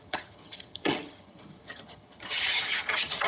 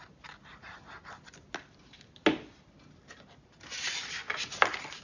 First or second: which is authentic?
second